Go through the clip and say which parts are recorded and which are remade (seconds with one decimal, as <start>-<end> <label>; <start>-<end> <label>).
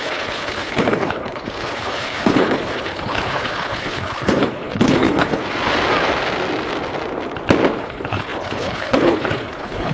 0.0-5.4 remade; 5.4-7.8 recorded; 7.8-9.9 remade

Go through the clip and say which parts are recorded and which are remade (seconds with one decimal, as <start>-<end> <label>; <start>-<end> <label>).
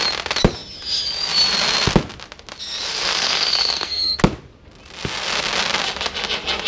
0.0-2.9 recorded; 2.9-4.2 remade; 4.2-6.7 recorded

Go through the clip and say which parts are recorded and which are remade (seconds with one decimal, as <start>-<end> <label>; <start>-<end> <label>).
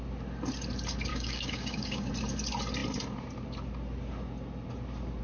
0.0-1.1 recorded; 1.1-2.1 remade; 2.1-5.2 recorded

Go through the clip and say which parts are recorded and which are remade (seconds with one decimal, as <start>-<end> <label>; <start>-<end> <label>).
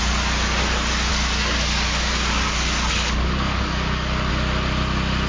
0.0-1.1 recorded; 1.1-4.3 remade; 4.3-5.3 recorded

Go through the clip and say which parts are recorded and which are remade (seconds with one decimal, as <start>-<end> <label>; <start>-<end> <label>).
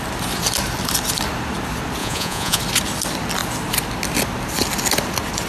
0.0-2.0 recorded; 2.0-2.6 remade; 2.6-5.5 recorded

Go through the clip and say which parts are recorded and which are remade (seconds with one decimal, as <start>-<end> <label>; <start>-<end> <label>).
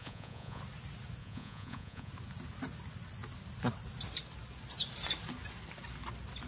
0.0-0.6 remade; 0.6-1.2 recorded; 1.2-2.1 remade; 2.1-6.5 recorded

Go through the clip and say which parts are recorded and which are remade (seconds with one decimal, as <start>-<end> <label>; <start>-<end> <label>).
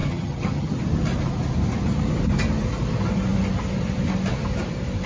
0.0-0.8 remade; 0.8-5.1 recorded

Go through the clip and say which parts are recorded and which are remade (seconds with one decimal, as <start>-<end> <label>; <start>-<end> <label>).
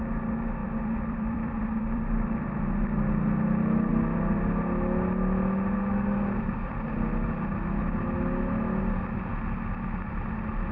0.0-0.6 recorded; 0.6-2.6 remade; 2.6-10.7 recorded